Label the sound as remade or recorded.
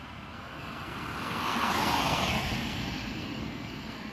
remade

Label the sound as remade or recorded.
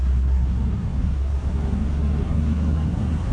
remade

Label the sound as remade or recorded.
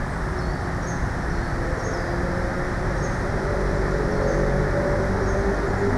recorded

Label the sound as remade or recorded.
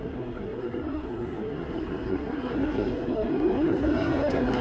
remade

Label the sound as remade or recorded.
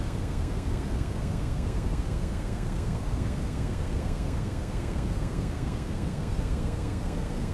remade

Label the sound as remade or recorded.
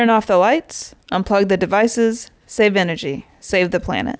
recorded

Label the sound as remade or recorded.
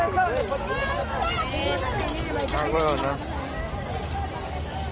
recorded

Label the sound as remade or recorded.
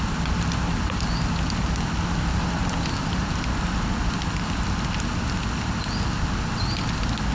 recorded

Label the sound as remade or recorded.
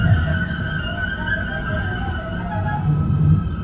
recorded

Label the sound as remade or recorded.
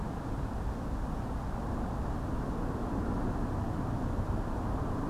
recorded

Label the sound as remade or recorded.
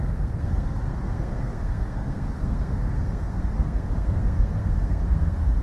remade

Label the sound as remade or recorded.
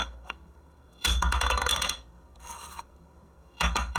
remade